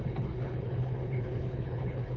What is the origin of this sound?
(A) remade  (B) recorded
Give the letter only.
A